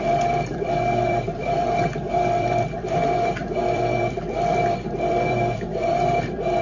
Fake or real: fake